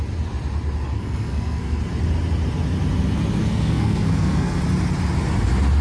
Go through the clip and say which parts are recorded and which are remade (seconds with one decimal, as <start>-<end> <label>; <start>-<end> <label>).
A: 0.0-0.9 recorded; 0.9-1.8 remade; 1.8-3.4 recorded; 3.4-4.6 remade; 4.6-5.8 recorded

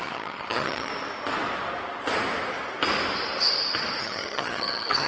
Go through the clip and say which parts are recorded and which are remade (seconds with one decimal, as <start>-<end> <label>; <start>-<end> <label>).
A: 0.0-0.9 remade; 0.9-4.0 recorded; 4.0-5.1 remade